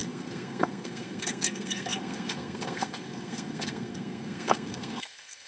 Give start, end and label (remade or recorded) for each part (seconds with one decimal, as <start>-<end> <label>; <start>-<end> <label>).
0.0-5.5 remade